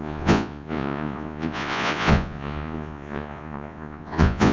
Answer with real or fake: fake